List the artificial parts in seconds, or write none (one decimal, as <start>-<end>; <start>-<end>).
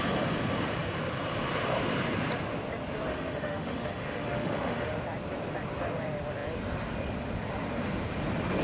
3.1-4.9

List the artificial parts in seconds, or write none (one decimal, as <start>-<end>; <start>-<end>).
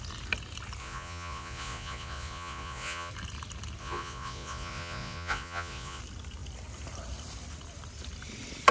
0.8-3.1; 3.8-6.0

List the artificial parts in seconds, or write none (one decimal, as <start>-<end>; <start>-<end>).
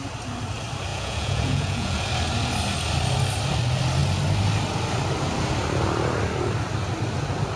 0.9-2.1